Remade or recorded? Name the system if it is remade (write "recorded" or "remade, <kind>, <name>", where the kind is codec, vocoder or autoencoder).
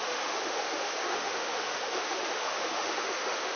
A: remade, autoencoder, DAC-VAE